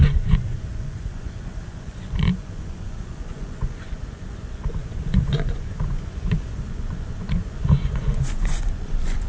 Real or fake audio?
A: fake